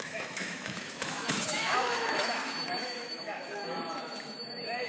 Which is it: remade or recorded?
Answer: remade